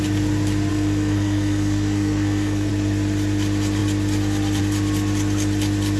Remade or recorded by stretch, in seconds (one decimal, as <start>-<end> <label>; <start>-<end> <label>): 0.0-0.7 recorded; 0.7-2.7 remade; 2.7-6.0 recorded